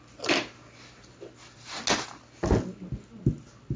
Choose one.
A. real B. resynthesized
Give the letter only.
A